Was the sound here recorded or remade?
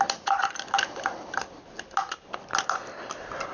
recorded